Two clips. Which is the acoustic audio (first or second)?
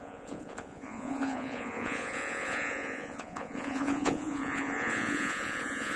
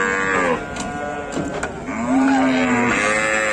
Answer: second